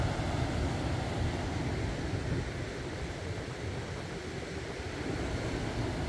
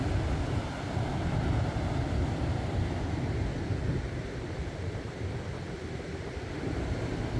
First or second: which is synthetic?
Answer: second